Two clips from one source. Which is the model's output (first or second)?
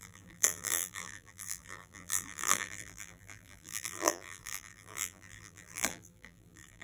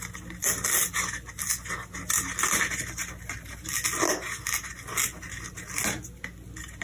first